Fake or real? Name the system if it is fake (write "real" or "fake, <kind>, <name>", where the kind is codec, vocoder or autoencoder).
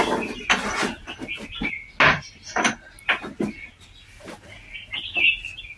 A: real